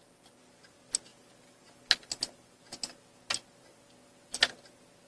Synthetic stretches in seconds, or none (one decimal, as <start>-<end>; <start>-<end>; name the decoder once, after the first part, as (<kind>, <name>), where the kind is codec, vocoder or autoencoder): none